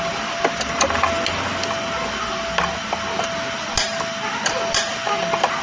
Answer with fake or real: real